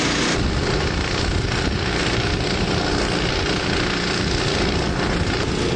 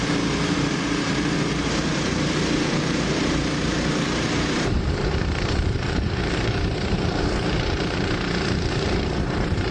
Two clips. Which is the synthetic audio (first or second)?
second